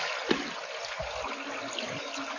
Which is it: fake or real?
real